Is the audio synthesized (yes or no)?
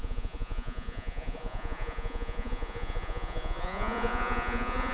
yes